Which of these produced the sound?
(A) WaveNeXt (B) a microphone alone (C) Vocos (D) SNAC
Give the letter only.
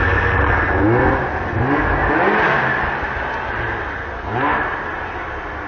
B